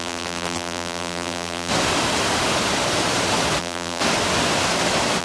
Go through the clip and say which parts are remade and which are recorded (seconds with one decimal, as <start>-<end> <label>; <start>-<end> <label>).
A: 0.0-1.7 remade; 1.7-3.6 recorded; 3.6-4.0 remade; 4.0-5.2 recorded